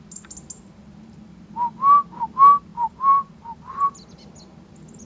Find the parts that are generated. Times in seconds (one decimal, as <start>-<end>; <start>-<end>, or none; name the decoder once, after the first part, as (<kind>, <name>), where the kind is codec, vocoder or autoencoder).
none